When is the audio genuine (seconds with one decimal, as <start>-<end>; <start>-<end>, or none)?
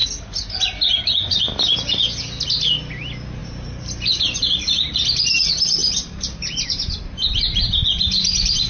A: 0.0-3.4; 4.4-5.8; 7.7-8.7